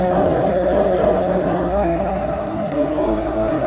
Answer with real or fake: fake